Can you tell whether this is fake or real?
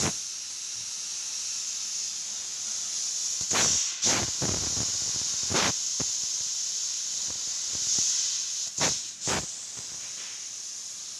real